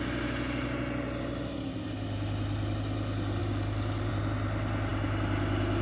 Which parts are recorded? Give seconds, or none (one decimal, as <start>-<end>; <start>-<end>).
0.0-3.4; 4.1-5.8